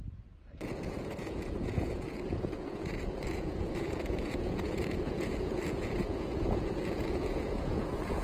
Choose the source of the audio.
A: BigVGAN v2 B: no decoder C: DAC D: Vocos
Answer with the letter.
D